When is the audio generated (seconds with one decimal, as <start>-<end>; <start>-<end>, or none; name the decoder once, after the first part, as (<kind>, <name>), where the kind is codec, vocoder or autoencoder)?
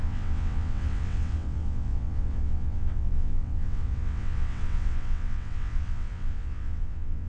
0.0-7.3 (vocoder, WaveNeXt)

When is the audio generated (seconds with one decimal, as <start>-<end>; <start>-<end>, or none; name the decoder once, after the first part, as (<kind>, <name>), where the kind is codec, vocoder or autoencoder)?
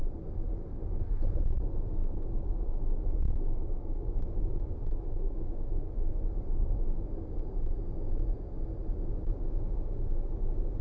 2.0-6.1 (autoencoder, DAC-VAE)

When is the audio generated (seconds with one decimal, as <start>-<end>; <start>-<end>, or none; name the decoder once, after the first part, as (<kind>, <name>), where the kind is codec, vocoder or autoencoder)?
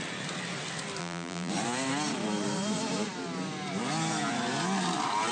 1.0-1.5 (vocoder, BigVGAN v2)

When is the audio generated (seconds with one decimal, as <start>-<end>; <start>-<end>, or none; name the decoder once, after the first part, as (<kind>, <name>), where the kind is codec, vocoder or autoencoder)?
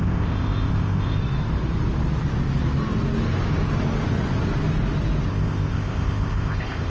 0.0-1.2 (codec, ZipCodec); 5.3-6.9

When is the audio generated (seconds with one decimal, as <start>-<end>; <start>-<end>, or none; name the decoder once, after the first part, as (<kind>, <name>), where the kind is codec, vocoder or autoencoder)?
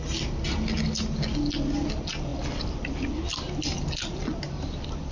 none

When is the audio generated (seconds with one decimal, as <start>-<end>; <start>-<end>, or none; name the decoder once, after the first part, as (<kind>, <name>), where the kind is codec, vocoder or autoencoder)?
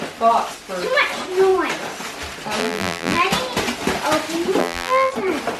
2.6-3.2 (vocoder, BigVGAN v2); 4.6-5.1